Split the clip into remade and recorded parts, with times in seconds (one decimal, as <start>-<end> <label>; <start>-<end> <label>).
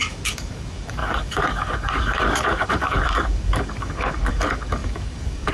0.0-5.5 remade